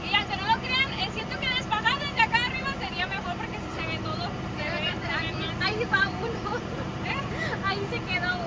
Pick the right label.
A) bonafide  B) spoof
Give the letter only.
A